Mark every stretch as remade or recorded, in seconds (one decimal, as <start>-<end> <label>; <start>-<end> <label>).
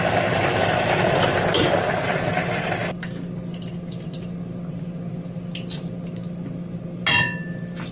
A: 0.0-7.9 recorded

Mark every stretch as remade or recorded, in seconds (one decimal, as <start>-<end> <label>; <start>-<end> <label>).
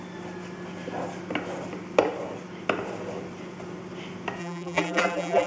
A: 0.0-4.4 recorded; 4.4-5.5 remade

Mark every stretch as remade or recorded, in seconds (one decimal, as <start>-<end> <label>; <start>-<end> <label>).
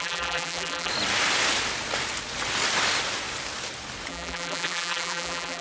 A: 0.0-0.9 remade; 0.9-4.1 recorded; 4.1-5.6 remade